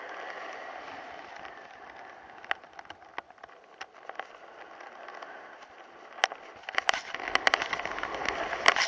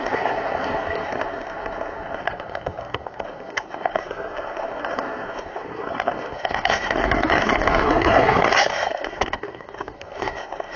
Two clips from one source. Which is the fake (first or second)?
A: second